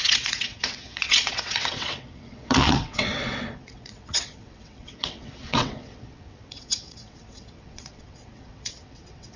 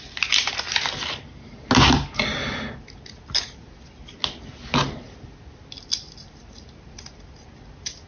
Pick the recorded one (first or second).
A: second